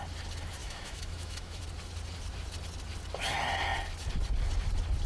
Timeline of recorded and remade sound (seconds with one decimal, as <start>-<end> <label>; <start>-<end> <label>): 0.0-0.6 recorded; 0.6-1.6 remade; 1.6-5.1 recorded